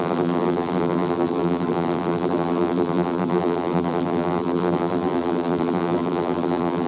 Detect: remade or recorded remade